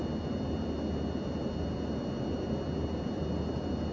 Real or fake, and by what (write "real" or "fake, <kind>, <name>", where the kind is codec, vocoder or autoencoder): real